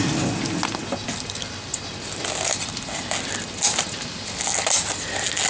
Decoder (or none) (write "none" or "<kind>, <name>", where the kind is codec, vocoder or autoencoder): none